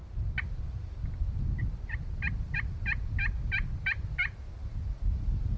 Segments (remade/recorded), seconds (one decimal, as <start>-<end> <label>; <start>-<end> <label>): 0.0-5.6 recorded

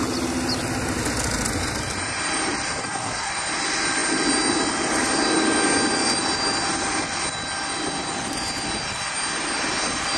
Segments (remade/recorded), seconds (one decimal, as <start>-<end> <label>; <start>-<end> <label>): 0.0-2.8 recorded; 2.8-3.3 remade; 3.3-10.2 recorded

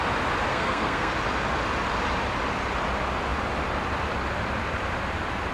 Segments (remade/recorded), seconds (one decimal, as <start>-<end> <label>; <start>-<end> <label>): 0.0-0.5 recorded; 0.5-1.1 remade; 1.1-5.5 recorded

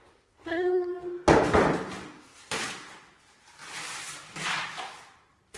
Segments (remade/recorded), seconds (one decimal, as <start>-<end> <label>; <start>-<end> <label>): 0.0-0.9 remade; 0.9-2.2 recorded; 2.2-2.6 remade; 2.6-5.6 recorded

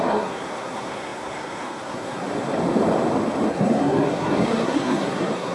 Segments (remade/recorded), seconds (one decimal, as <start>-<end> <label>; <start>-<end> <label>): 0.0-2.3 remade; 2.3-3.5 recorded; 3.5-5.5 remade